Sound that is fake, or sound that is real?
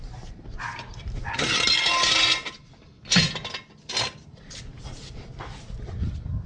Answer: real